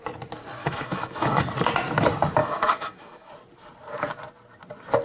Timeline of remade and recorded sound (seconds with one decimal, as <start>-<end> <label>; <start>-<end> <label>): 0.0-0.6 recorded; 0.6-1.4 remade; 1.4-2.4 recorded; 2.4-3.3 remade; 3.3-5.0 recorded